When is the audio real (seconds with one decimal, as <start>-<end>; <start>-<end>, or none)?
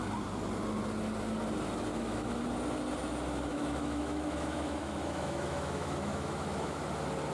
0.0-1.9; 2.4-3.5; 6.8-7.3